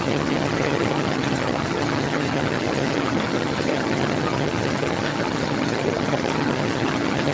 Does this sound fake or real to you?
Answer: fake